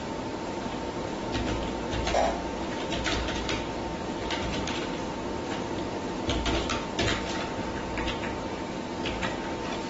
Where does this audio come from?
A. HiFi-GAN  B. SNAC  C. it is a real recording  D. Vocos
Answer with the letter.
C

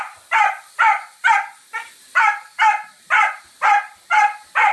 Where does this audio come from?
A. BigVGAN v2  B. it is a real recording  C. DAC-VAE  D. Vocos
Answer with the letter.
A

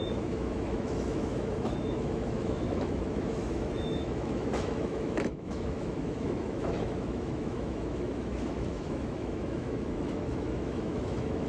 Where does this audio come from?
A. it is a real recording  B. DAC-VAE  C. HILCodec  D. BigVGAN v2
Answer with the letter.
B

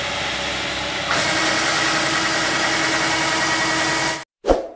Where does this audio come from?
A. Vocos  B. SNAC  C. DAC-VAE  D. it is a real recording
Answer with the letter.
D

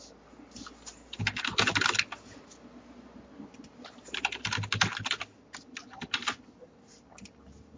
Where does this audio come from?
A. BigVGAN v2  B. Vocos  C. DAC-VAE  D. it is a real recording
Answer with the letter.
D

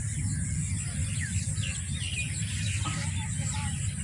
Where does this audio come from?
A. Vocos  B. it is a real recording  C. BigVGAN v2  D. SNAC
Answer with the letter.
B